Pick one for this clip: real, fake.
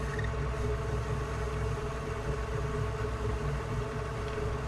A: real